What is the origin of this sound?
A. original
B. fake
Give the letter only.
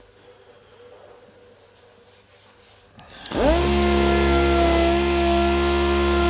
A